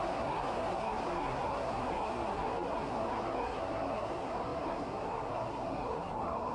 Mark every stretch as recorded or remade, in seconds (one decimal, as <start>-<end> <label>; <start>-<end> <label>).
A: 0.0-6.5 remade

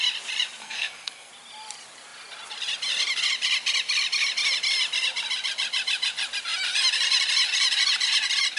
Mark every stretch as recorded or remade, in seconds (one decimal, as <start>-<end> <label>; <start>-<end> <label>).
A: 0.0-0.6 recorded; 0.6-1.3 remade; 1.3-8.6 recorded

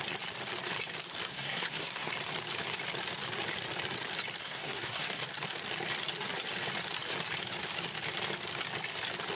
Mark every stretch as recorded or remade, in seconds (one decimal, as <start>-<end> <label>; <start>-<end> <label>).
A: 0.0-1.3 recorded; 1.3-2.1 remade; 2.1-4.4 recorded; 4.4-5.2 remade; 5.2-9.3 recorded

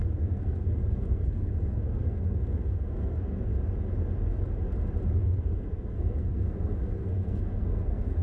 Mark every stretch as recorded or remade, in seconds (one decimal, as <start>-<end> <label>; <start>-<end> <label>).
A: 0.0-3.5 remade; 3.5-5.2 recorded; 5.2-8.2 remade